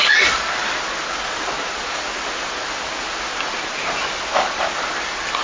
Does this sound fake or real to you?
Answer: real